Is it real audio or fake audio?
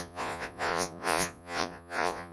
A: fake